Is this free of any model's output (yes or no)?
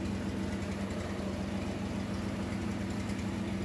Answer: yes